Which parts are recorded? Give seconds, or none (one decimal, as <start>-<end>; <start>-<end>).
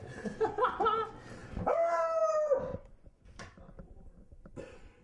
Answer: 0.0-2.7; 3.3-5.0